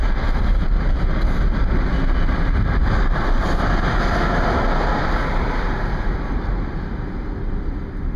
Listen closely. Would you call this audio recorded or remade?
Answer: recorded